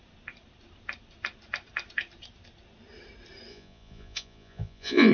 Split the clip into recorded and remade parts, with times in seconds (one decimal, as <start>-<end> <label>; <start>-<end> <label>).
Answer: 0.0-3.5 recorded; 3.5-5.1 remade

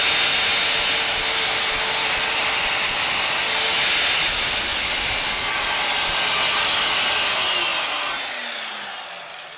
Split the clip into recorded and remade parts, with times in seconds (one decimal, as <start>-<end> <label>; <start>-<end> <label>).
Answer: 0.0-9.6 recorded

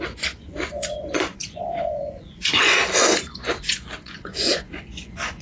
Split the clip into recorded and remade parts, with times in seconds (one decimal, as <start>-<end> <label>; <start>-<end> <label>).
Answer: 0.0-5.4 remade

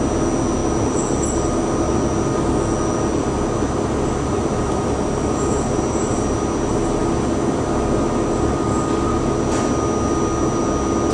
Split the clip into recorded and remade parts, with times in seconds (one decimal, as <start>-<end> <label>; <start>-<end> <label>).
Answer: 0.0-11.1 recorded

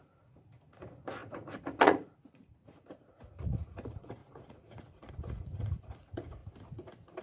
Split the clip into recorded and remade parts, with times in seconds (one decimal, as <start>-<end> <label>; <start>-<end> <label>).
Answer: 0.0-6.4 remade; 6.4-7.2 recorded

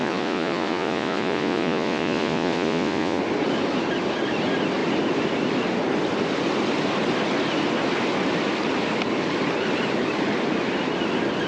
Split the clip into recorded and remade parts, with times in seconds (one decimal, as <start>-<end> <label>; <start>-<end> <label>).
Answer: 0.0-3.2 remade; 3.2-11.5 recorded

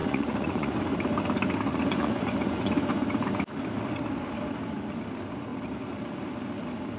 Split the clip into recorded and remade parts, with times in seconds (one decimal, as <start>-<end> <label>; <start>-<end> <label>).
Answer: 0.0-0.8 remade; 0.8-1.7 recorded; 1.7-2.7 remade; 2.7-7.0 recorded

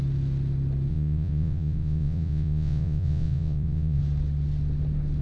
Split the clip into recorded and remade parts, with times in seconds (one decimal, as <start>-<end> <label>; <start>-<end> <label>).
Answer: 0.0-0.9 recorded; 0.9-4.0 remade; 4.0-5.2 recorded